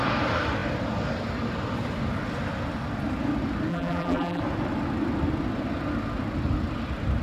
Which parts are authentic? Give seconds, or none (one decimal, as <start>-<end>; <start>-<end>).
0.0-3.7; 4.4-7.2

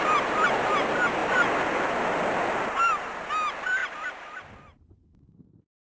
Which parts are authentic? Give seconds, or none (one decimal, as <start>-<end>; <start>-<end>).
0.0-3.8; 5.1-5.9

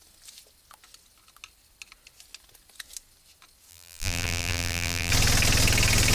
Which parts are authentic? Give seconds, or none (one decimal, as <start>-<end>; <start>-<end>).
0.0-3.7; 5.1-6.1

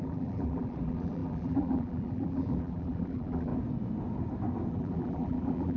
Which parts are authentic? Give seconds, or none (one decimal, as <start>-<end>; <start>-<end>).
3.5-4.7